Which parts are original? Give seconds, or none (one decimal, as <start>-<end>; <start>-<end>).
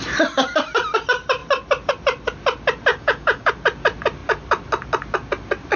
0.0-2.9; 3.5-5.8